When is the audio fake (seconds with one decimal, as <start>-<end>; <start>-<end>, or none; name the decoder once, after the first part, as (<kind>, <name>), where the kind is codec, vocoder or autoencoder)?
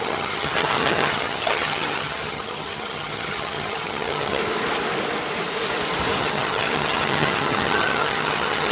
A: 0.0-4.4 (vocoder, HiFi-GAN); 6.2-8.7